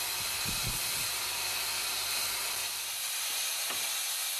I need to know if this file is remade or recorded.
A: recorded